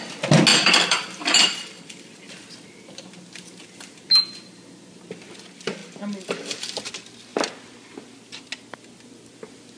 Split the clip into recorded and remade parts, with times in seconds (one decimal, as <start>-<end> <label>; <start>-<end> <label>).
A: 0.0-0.5 recorded; 0.5-2.3 remade; 2.3-5.8 recorded; 5.8-6.8 remade; 6.8-9.8 recorded